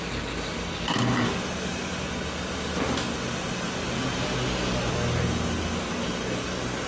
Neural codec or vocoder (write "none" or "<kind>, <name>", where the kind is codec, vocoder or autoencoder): none